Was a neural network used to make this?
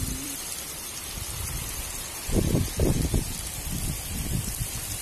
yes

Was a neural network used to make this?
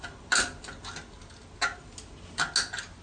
no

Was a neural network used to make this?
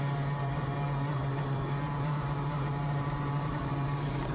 yes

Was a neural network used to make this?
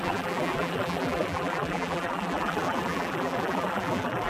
yes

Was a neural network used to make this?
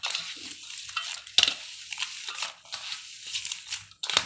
no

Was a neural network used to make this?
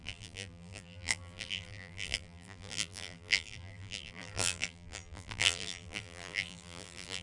yes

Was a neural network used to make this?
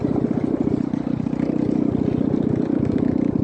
yes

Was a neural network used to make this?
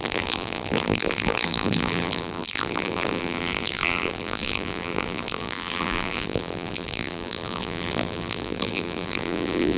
yes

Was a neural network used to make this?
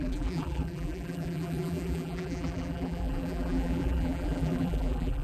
yes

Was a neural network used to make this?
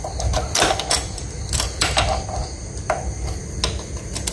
no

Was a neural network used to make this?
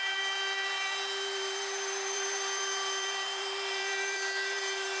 yes